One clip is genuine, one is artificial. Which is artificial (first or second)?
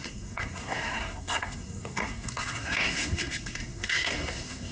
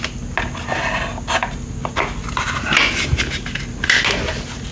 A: first